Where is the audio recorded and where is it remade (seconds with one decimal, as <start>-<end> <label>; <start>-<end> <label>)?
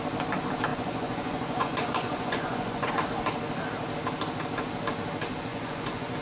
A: 0.0-0.7 recorded; 0.7-2.9 remade; 2.9-5.5 recorded; 5.5-6.2 remade